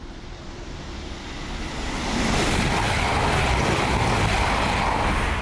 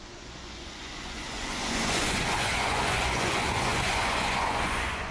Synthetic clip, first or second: second